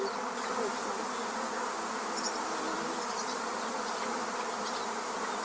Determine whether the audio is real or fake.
fake